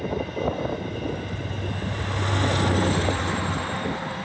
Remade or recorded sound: recorded